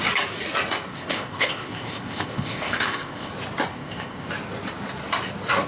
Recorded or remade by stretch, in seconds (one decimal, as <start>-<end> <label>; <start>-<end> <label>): 0.0-0.9 recorded; 0.9-3.3 remade; 3.3-3.7 recorded; 3.7-4.3 remade; 4.3-5.7 recorded